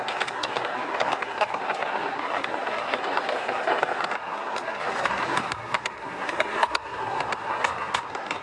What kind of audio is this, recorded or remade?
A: remade